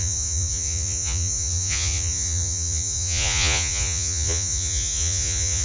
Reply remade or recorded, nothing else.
remade